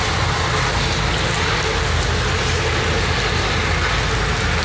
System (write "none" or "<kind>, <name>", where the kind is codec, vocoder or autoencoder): none